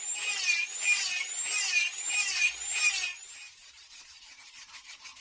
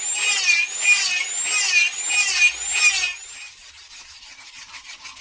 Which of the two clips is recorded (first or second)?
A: second